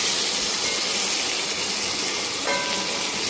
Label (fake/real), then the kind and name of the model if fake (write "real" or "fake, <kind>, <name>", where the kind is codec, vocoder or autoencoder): real